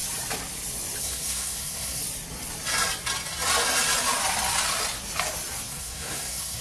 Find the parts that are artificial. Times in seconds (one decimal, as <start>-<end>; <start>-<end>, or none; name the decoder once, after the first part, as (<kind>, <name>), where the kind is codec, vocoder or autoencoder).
1.0-2.0 (codec, SNAC); 5.7-6.6